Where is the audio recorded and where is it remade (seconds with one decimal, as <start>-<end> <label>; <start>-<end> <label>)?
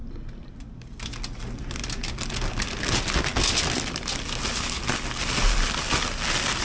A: 0.0-6.6 recorded